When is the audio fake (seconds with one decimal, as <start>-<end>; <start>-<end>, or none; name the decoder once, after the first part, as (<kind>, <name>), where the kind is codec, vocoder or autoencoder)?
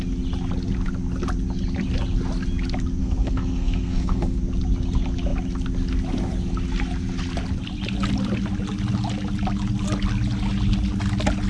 3.0-4.4 (codec, SNAC)